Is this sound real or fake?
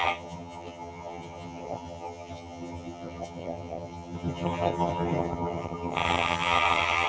fake